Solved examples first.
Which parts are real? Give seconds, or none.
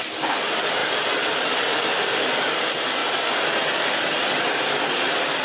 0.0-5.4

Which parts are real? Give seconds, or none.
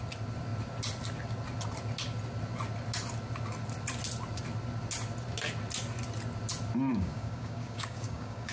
0.0-6.9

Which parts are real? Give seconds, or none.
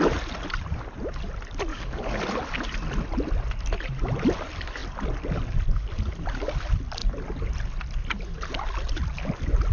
0.0-1.7; 2.2-9.7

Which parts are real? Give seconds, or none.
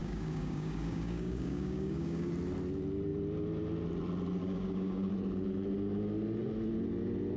2.3-4.4; 5.1-7.4